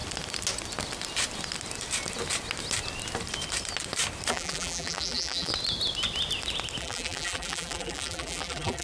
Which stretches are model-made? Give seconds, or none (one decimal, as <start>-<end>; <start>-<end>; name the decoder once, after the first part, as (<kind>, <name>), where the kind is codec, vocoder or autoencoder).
4.3-5.5 (vocoder, BigVGAN v2); 6.8-8.8